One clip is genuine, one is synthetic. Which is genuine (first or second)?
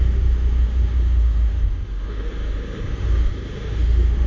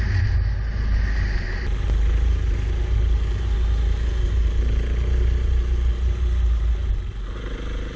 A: second